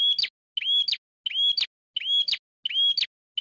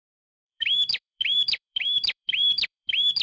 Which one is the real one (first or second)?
first